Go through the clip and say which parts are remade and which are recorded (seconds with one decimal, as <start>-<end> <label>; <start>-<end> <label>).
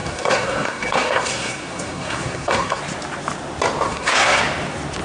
0.0-2.8 remade; 2.8-3.9 recorded; 3.9-4.4 remade; 4.4-5.0 recorded